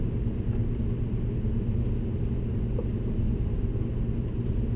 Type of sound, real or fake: real